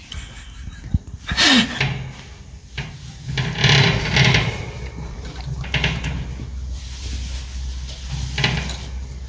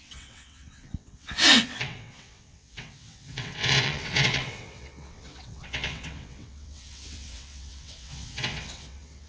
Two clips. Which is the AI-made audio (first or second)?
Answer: second